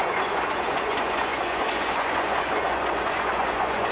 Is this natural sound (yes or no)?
no